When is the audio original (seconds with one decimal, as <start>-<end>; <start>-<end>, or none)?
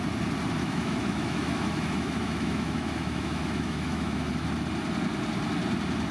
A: 0.0-0.6; 4.3-6.1